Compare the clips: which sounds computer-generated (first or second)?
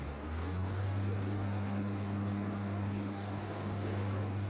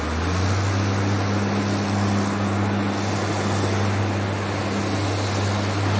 first